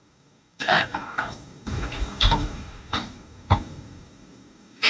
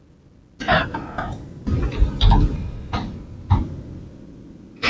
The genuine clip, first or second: second